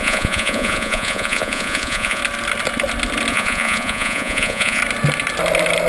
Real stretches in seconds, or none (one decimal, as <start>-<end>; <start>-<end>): 2.2-3.3; 4.8-5.9